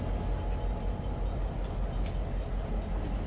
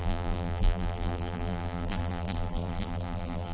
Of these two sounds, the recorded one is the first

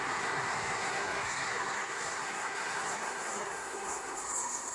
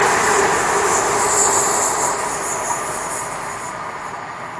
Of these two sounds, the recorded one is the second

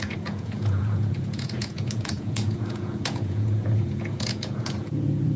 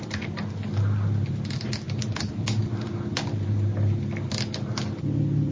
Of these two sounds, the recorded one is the second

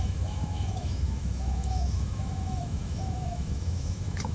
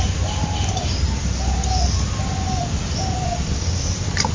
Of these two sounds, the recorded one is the second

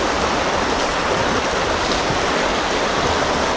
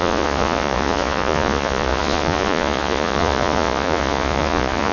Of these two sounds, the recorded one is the first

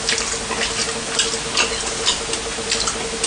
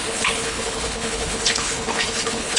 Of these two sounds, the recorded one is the first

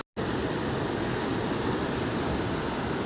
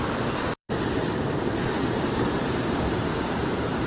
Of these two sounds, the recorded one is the first